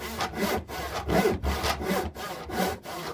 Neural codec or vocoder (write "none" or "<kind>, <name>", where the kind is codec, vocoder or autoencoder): none